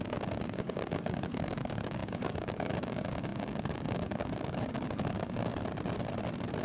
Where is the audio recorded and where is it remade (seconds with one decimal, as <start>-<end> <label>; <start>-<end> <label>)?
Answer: 0.0-5.5 remade; 5.5-6.6 recorded